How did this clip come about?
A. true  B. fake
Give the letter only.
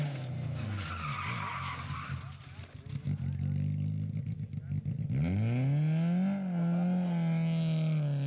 A